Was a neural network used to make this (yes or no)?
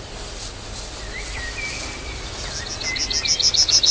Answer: no